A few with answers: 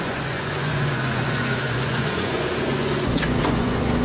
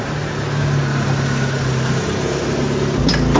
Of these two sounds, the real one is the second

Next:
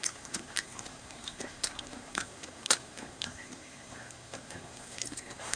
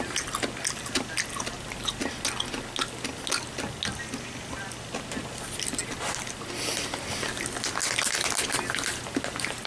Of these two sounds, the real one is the second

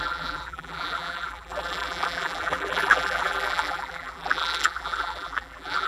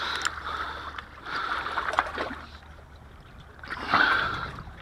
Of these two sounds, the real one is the second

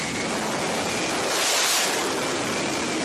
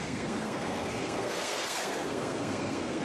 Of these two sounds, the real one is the first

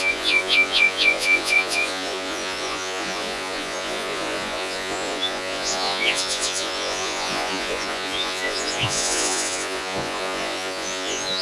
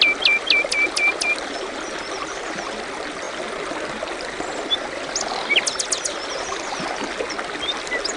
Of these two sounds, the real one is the second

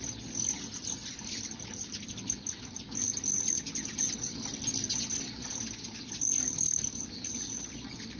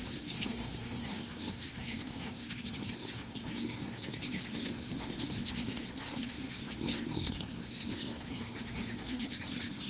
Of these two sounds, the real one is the first